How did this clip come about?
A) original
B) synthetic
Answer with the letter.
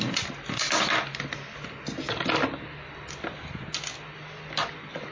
A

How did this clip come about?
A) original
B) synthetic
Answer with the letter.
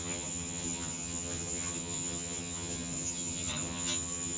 B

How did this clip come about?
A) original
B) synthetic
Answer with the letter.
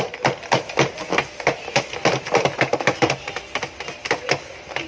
A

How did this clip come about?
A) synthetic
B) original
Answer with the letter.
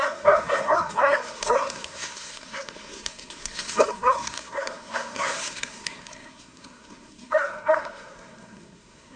A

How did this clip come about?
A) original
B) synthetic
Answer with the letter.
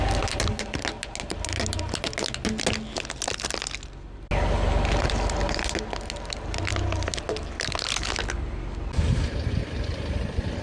A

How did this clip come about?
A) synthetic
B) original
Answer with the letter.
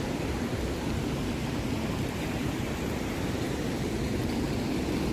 B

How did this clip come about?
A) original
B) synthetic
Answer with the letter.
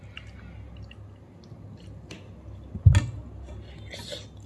A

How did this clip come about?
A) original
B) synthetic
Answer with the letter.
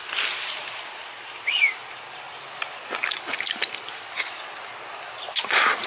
A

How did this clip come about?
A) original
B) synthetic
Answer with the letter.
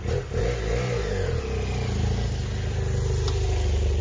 A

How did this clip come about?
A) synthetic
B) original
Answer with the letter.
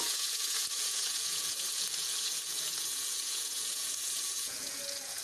A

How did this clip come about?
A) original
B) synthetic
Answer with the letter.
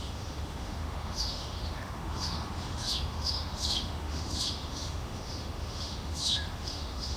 B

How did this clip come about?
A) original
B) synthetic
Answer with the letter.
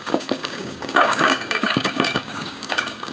B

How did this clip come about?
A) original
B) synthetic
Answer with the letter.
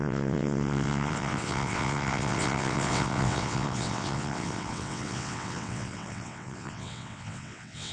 B